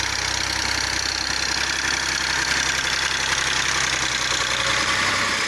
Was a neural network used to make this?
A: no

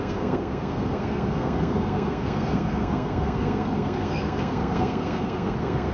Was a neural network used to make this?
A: yes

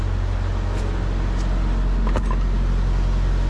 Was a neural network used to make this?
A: no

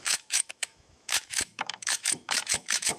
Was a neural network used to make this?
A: yes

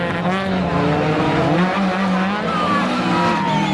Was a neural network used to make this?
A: no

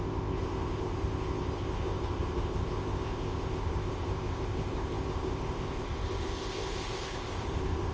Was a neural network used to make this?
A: yes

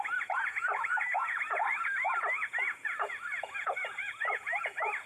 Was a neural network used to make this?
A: yes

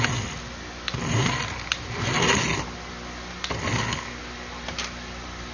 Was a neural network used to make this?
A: no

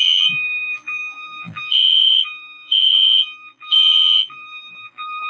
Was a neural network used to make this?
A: yes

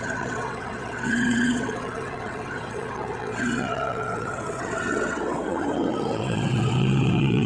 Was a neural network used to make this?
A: yes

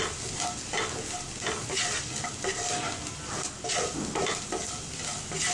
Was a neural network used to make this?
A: no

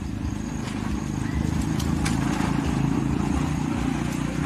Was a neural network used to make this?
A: no